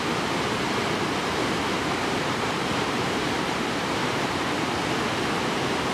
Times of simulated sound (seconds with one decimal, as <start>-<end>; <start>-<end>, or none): 1.2-4.7